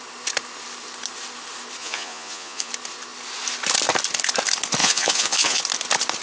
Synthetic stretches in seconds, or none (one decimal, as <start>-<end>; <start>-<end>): 1.8-2.7; 4.8-5.6